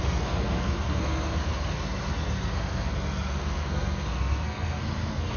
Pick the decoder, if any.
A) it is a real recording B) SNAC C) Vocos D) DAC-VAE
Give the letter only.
B